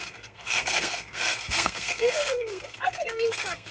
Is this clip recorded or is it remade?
remade